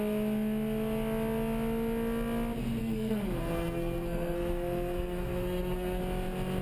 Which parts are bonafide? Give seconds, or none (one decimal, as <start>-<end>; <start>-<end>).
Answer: 0.0-2.8; 6.0-6.6